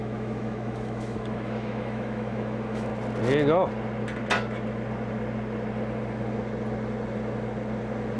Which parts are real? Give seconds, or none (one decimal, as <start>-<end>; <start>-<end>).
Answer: 2.9-8.2